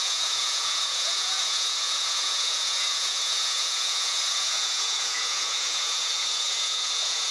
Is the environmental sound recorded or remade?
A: remade